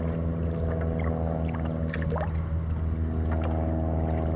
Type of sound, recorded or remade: recorded